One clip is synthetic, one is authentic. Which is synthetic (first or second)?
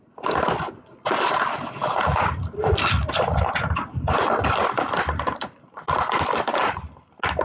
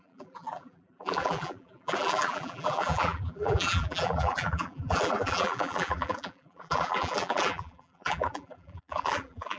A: second